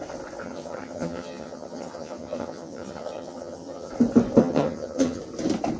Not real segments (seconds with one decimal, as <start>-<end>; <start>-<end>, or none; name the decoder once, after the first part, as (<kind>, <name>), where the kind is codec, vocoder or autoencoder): 0.4-3.9 (vocoder, HiFi-GAN); 4.4-5.2